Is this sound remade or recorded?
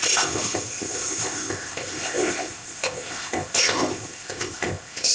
remade